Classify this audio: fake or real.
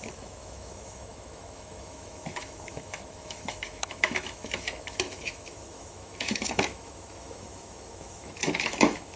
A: fake